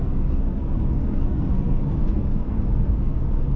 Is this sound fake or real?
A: fake